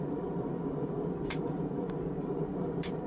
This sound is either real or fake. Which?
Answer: fake